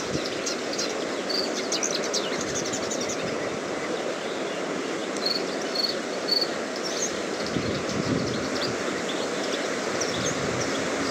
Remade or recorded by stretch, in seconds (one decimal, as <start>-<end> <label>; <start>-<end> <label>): 0.0-11.1 recorded